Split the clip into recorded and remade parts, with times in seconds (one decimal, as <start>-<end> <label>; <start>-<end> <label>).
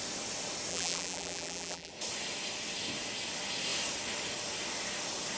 0.0-0.7 recorded; 0.7-1.9 remade; 1.9-5.4 recorded